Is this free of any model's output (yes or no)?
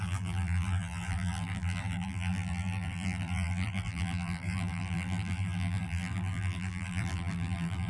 no